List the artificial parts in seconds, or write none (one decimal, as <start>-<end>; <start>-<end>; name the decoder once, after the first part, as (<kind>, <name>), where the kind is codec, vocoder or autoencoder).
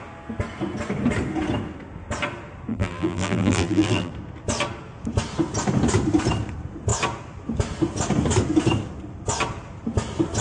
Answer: 2.7-4.1 (vocoder, BigVGAN v2)